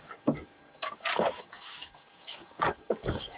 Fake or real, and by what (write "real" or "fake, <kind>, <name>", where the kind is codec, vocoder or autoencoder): fake, codec, DAC